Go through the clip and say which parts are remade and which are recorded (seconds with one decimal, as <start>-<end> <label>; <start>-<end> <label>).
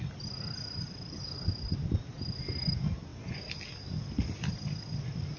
0.0-5.4 recorded